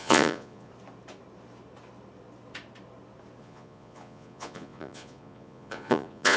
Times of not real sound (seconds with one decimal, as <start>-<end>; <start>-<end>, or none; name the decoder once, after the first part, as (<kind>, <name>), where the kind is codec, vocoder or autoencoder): 0.0-0.7 (vocoder, Vocos); 3.4-6.4